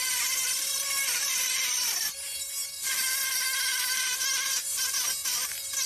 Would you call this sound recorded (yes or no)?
no